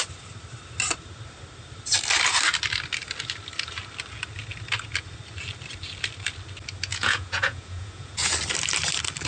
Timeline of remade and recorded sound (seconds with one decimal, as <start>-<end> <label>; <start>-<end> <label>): 0.0-6.9 recorded; 6.9-8.3 remade; 8.3-9.3 recorded